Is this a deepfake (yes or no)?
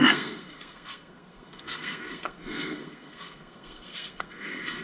yes